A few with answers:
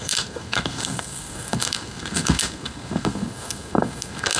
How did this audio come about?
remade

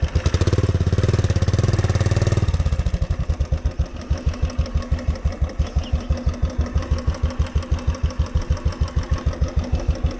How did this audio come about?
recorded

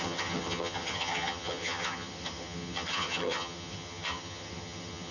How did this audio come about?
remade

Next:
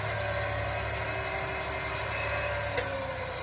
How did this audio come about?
recorded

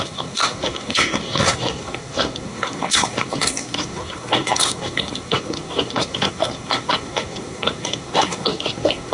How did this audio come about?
remade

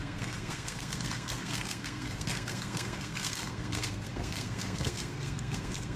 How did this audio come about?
remade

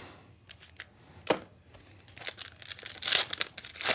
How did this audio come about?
recorded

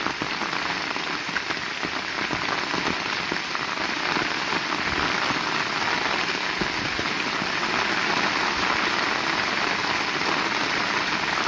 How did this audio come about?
recorded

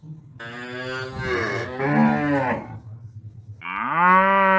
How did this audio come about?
recorded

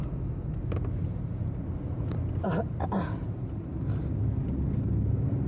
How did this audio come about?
recorded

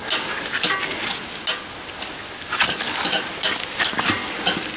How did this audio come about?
recorded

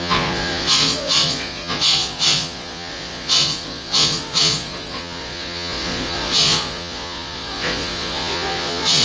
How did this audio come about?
remade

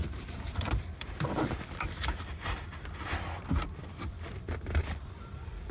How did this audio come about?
remade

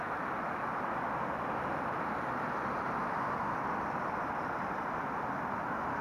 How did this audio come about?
recorded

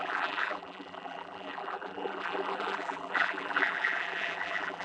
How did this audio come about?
remade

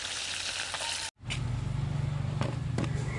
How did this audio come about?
recorded